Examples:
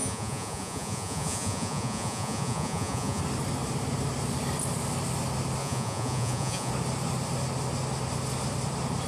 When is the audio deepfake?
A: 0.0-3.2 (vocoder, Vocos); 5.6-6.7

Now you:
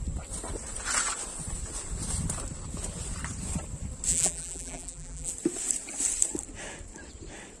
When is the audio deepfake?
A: 4.1-5.3 (vocoder, BigVGAN v2)

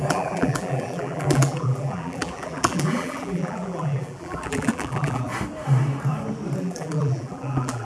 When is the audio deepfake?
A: 0.0-5.3 (vocoder, BigVGAN v2); 6.6-7.8

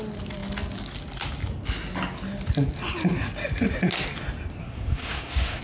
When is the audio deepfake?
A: 4.6-5.6 (codec, SNAC)

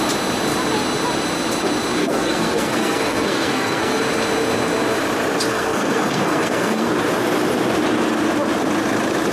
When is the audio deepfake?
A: 2.0-4.0 (codec, SNAC); 5.5-6.9

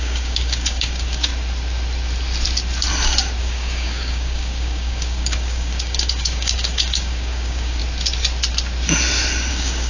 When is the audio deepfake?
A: 0.0-1.3 (codec, DAC); 3.4-7.8; 9.5-9.9

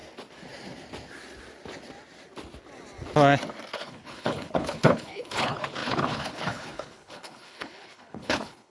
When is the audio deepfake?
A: 3.7-8.7 (codec, HILCodec)

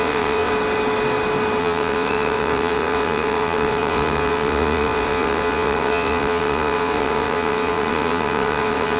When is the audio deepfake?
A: 0.0-0.5 (vocoder, WaveNeXt); 1.6-9.0